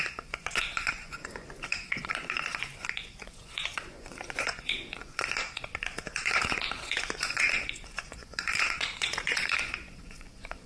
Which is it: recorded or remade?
remade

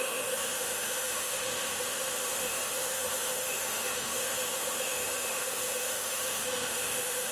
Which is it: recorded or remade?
remade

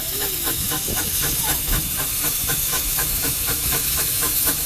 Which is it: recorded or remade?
remade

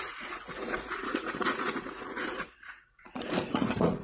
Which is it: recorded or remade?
remade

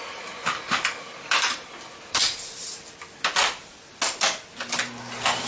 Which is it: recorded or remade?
recorded